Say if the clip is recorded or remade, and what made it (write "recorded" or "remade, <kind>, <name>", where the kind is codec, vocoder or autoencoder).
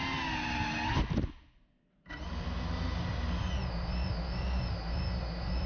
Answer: recorded